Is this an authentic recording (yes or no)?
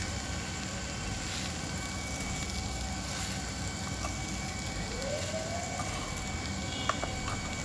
yes